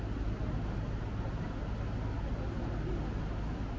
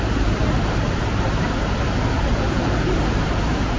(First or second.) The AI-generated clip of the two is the second